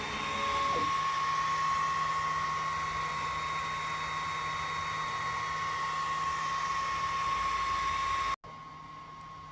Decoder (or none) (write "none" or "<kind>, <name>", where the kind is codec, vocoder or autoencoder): none